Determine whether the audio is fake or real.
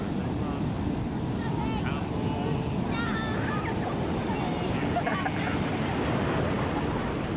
real